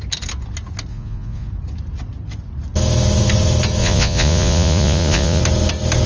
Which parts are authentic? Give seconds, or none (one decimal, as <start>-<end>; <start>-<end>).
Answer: 0.0-0.9; 1.5-3.8; 5.4-6.1